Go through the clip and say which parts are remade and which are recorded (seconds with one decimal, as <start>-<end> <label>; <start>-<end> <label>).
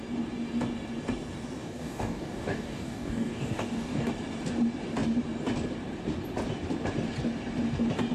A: 0.0-1.6 recorded; 1.6-4.1 remade; 4.1-8.1 recorded